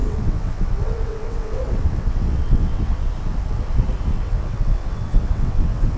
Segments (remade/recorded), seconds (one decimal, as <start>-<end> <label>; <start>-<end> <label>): 0.0-3.1 remade; 3.1-4.1 recorded; 4.1-6.0 remade